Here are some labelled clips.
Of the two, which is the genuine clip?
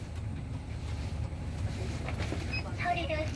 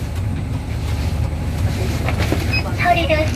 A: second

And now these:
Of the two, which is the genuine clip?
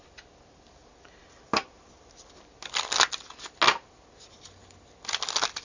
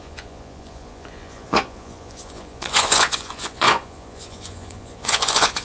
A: first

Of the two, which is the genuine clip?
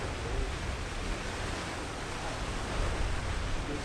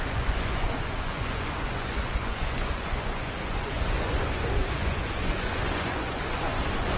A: first